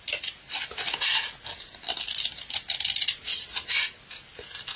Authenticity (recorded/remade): recorded